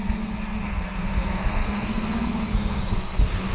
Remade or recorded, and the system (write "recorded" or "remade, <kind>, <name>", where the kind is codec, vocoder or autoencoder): remade, codec, SNAC